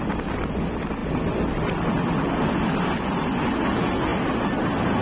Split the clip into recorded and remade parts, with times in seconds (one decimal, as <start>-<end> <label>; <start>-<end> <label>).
0.0-5.0 recorded